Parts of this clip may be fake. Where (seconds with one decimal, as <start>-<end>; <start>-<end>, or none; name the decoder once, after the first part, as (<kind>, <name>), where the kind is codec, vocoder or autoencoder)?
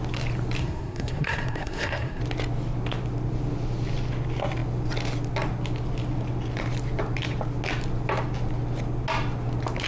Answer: 0.6-2.2 (codec, SNAC)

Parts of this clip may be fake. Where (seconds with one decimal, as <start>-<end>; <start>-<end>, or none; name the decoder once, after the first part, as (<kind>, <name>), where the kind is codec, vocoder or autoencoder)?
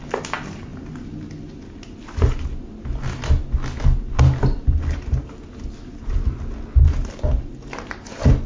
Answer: none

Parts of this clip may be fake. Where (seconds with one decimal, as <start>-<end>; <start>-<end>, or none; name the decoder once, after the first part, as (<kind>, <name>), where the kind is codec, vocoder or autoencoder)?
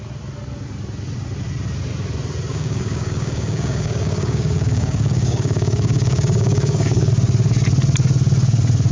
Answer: 2.5-7.1 (codec, DAC)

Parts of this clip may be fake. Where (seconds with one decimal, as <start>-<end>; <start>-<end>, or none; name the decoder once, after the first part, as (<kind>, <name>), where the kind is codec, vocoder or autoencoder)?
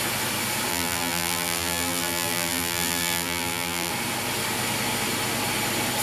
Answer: 0.7-3.9 (vocoder, BigVGAN v2)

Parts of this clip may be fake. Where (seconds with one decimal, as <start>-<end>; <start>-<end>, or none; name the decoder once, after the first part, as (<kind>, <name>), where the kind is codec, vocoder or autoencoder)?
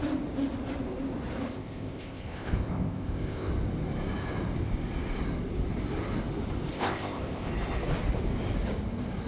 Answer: 1.5-3.5 (codec, ZipCodec); 6.7-7.5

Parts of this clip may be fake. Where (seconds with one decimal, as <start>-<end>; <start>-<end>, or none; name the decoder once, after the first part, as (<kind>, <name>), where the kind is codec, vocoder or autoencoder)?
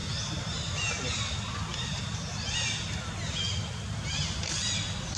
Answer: none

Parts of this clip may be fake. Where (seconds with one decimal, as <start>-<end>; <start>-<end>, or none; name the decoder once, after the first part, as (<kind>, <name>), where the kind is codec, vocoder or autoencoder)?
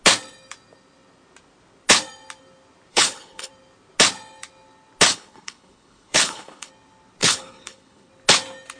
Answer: 2.9-3.5 (codec, HILCodec); 5.1-6.7; 7.2-8.1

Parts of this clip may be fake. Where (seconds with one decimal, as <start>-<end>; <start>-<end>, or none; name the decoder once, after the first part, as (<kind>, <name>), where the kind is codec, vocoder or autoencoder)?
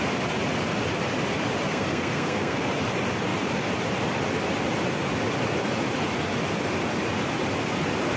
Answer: 1.7-2.7 (codec, SNAC)